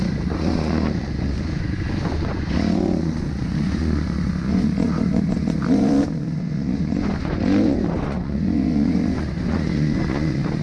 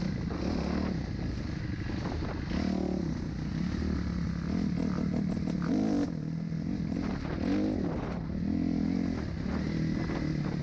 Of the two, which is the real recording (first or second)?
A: second